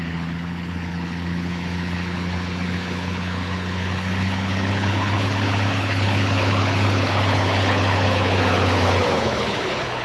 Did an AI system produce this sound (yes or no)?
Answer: yes